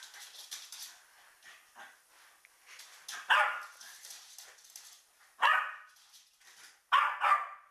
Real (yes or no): yes